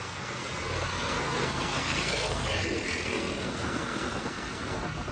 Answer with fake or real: fake